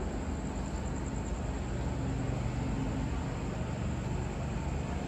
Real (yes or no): yes